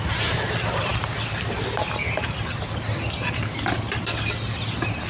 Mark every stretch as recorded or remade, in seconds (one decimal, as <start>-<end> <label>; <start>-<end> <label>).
0.0-5.1 recorded